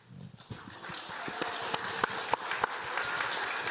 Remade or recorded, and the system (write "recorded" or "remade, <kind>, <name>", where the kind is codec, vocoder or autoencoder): recorded